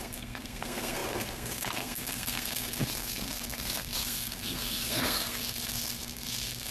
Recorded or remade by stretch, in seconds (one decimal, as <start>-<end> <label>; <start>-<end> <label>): 0.0-6.7 remade